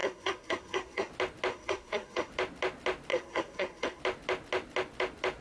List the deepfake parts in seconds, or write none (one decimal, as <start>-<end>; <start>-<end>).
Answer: 0.0-1.1; 1.5-2.3; 3.1-4.0